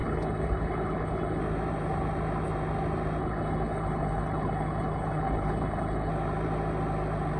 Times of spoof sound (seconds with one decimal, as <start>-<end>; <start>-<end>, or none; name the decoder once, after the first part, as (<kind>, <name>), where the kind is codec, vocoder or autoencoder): 0.0-1.4 (codec, HILCodec); 3.2-6.1